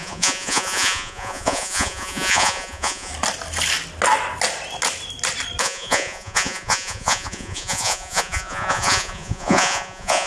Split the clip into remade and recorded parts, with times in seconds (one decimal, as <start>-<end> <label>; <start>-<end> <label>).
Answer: 0.0-3.1 remade; 3.1-5.6 recorded; 5.6-10.3 remade